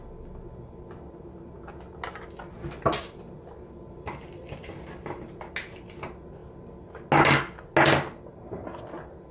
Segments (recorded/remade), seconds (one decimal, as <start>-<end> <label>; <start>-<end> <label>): 0.0-9.3 recorded